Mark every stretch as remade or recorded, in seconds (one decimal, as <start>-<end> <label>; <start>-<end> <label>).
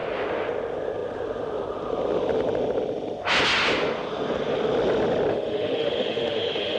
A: 0.0-5.3 recorded; 5.3-6.8 remade